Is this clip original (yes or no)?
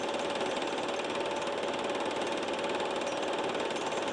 yes